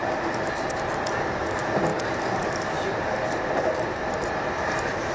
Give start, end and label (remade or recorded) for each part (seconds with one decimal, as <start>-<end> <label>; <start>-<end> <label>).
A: 0.0-5.1 recorded